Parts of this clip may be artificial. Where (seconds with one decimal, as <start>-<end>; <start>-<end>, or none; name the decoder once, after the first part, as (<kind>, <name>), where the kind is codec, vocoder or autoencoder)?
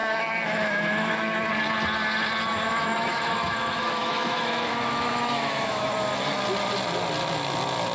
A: 0.0-1.5 (autoencoder, DAC-VAE); 2.5-5.9